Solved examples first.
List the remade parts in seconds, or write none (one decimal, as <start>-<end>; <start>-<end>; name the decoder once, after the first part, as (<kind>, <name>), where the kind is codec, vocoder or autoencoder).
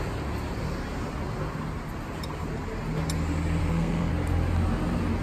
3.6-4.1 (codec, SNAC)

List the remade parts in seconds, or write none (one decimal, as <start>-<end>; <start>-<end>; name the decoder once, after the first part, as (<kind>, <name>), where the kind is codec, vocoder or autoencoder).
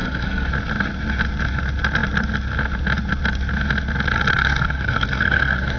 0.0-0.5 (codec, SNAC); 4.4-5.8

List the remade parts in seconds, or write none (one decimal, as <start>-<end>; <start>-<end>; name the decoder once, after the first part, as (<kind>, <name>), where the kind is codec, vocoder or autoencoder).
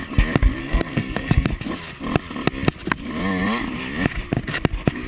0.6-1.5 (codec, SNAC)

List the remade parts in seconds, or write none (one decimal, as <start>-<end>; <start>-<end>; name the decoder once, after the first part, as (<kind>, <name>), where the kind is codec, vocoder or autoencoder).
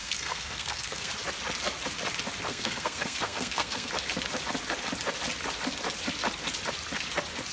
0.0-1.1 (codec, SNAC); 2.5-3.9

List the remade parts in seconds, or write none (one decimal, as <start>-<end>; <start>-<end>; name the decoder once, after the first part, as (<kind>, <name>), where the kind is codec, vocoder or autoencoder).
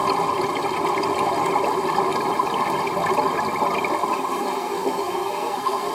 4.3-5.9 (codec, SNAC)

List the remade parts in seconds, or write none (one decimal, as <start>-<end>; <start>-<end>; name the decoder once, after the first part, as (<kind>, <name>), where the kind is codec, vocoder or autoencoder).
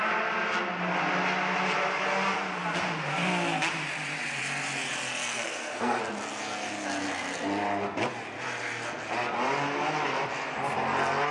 5.2-6.0 (codec, SNAC)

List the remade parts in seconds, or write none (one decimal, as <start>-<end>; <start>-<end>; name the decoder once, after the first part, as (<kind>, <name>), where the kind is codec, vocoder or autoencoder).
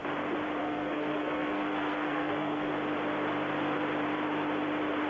0.6-2.7 (codec, SNAC)